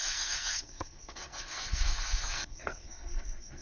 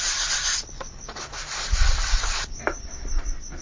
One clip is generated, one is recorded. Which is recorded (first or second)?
second